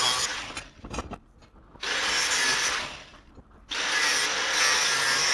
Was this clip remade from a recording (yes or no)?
no